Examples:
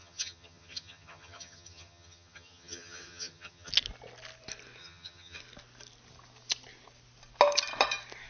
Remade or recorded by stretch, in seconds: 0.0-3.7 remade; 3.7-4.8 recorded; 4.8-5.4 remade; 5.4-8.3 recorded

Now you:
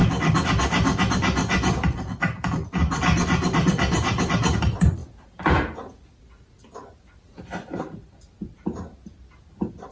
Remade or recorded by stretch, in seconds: 0.0-9.9 recorded

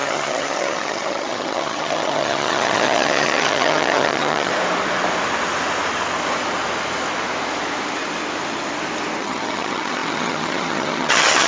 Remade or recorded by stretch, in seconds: 0.0-4.5 remade; 4.5-9.2 recorded; 9.2-11.5 remade

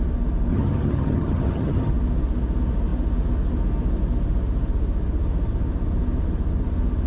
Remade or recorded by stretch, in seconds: 0.0-0.5 recorded; 0.5-1.9 remade; 1.9-7.1 recorded

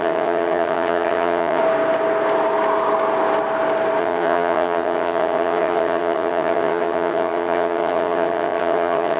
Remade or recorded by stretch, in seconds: 0.0-1.6 remade; 1.6-4.0 recorded; 4.0-9.2 remade

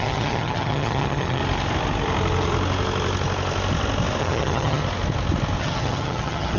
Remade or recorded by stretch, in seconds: 0.0-1.4 remade; 1.4-4.2 recorded; 4.2-4.8 remade; 4.8-5.6 recorded; 5.6-6.6 remade

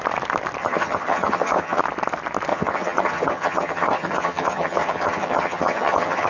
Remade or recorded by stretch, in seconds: 0.0-0.6 recorded; 0.6-1.8 remade; 1.8-2.5 recorded; 2.5-6.3 remade